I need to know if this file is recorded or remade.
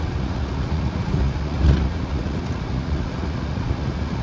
remade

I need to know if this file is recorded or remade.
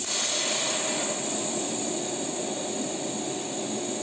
recorded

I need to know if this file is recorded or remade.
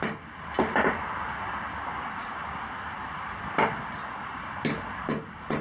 recorded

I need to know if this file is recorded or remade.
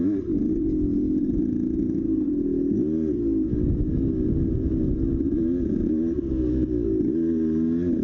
recorded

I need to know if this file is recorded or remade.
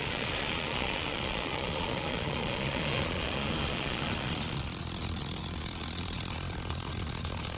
remade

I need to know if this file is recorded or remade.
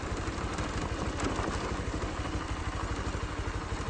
recorded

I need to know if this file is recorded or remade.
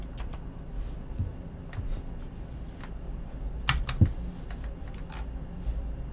recorded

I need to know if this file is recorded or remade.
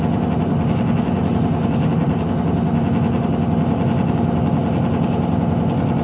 recorded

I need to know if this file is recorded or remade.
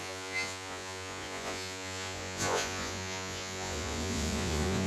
remade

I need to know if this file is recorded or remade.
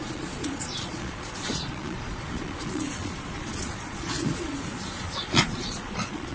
remade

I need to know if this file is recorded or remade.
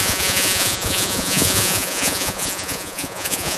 remade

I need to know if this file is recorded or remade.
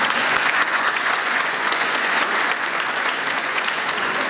remade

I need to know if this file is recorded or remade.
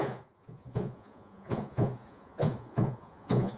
remade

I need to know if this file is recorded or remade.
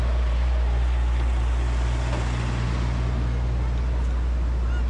recorded